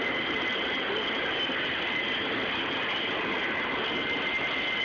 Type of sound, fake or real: real